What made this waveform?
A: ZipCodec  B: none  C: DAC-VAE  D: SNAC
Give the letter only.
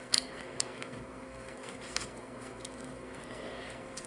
D